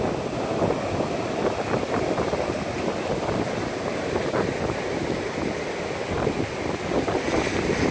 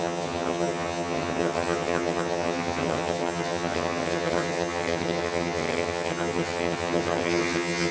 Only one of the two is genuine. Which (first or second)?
first